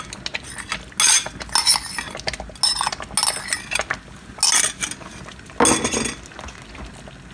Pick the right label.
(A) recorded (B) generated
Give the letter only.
A